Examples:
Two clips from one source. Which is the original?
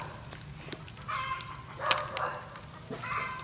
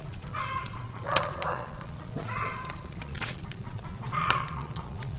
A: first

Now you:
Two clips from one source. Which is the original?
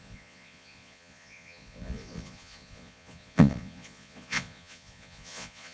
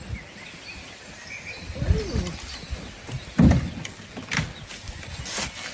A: second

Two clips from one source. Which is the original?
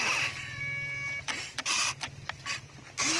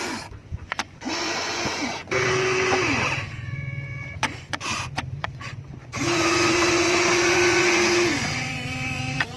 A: first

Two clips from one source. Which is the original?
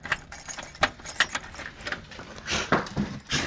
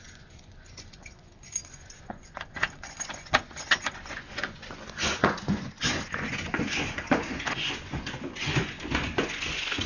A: first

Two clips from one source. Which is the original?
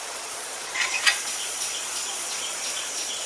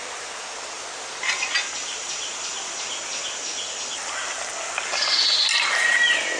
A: second